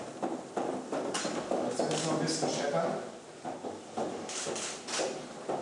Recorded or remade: recorded